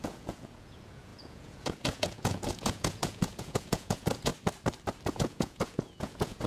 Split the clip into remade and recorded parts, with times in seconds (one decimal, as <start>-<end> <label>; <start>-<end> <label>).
0.0-4.3 remade; 4.3-5.1 recorded; 5.1-6.5 remade